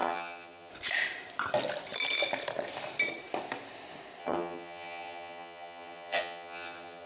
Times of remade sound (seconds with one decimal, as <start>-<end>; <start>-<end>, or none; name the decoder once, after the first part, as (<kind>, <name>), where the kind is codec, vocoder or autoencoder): 0.0-0.7 (vocoder, HiFi-GAN); 4.2-7.1